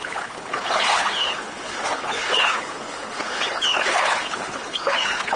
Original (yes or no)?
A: no